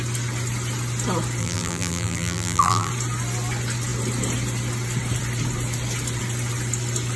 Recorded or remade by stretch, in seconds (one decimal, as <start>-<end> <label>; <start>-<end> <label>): 0.0-1.4 recorded; 1.4-2.9 remade; 2.9-7.2 recorded